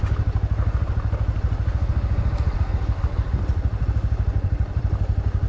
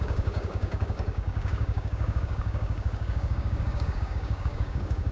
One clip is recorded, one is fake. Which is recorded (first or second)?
first